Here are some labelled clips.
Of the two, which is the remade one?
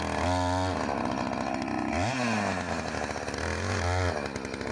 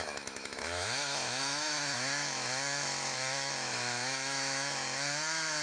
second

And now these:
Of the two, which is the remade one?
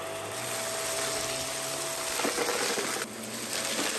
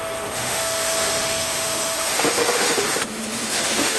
second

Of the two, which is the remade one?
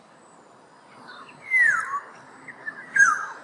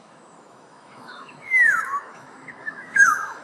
second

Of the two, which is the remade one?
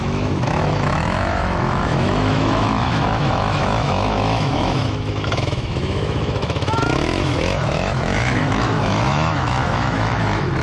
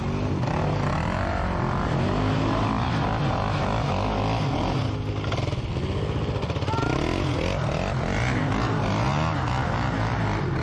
first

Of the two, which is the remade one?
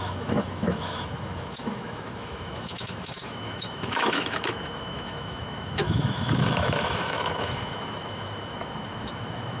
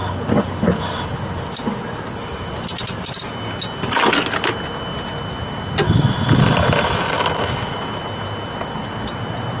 first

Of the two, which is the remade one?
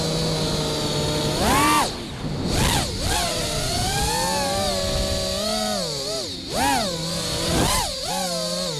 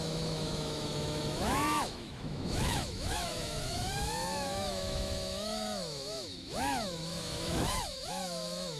second